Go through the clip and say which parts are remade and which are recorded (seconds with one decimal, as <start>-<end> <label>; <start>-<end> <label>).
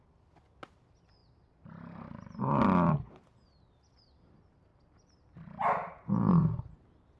0.0-4.7 recorded; 4.7-5.9 remade; 5.9-7.2 recorded